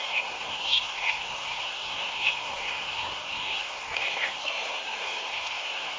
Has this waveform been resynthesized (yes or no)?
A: yes